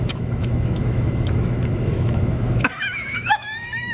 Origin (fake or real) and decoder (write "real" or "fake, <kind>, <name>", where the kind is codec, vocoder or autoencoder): fake, autoencoder, DAC-VAE